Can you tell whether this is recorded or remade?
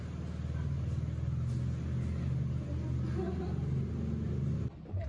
recorded